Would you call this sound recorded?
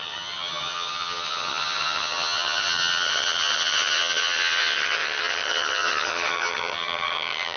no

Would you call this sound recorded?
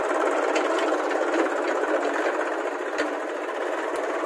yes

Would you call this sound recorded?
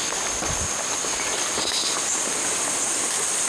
yes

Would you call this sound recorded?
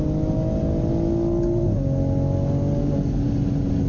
yes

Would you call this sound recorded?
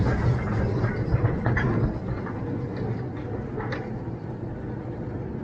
yes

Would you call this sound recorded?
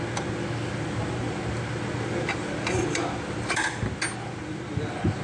yes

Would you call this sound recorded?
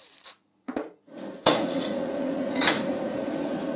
no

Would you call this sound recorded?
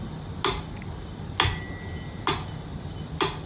yes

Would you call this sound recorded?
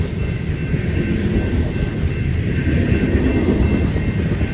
yes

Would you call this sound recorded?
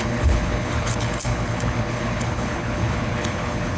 no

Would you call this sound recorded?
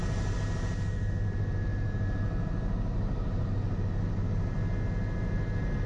yes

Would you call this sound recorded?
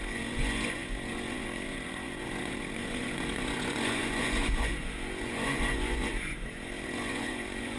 no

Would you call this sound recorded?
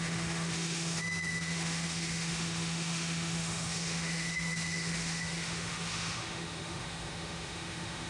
no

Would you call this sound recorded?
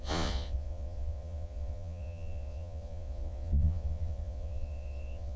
no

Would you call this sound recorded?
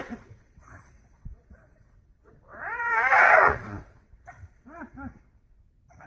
no